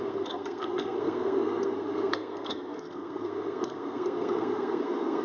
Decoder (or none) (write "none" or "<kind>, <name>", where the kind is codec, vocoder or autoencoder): codec, SNAC